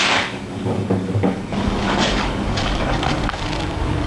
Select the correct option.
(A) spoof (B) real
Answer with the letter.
A